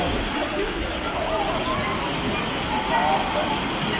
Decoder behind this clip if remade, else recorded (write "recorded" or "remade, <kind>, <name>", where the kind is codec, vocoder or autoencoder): recorded